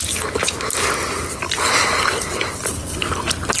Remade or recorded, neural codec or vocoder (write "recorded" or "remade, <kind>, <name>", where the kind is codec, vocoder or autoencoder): recorded